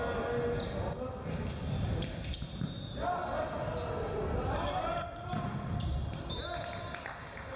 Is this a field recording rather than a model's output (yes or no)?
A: yes